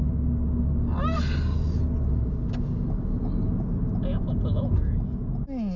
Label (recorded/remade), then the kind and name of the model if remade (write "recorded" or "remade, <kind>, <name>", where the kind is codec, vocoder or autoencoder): recorded